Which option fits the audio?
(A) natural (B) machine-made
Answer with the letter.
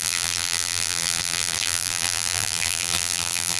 B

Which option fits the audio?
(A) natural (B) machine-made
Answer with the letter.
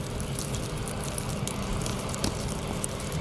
B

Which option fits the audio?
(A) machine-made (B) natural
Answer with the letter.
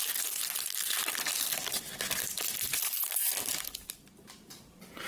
B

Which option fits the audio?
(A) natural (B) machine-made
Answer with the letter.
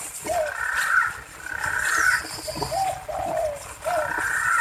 A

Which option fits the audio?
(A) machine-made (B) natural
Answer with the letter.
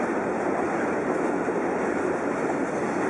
B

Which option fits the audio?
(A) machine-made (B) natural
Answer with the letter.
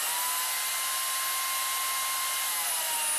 B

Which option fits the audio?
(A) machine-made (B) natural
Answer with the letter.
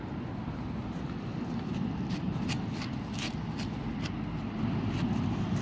B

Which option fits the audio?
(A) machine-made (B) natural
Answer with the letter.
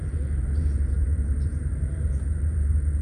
A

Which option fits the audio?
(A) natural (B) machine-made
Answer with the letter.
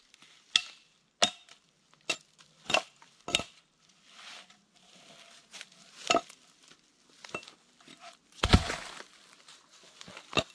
A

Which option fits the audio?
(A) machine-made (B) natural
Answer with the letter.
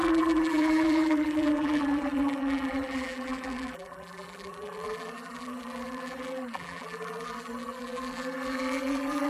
A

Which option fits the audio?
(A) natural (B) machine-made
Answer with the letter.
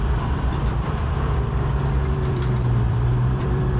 B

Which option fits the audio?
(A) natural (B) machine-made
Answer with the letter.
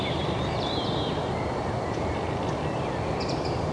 B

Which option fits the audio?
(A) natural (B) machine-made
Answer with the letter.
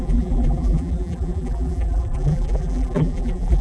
B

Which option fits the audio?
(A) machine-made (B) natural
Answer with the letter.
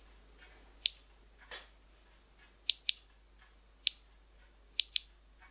B